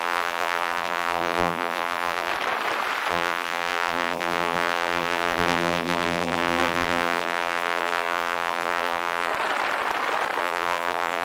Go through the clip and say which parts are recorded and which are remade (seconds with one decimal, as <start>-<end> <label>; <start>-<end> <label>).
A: 0.0-2.3 remade; 2.3-3.1 recorded; 3.1-9.3 remade; 9.3-10.4 recorded; 10.4-11.2 remade